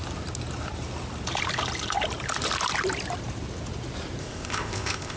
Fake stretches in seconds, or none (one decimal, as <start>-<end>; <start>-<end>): 4.2-5.2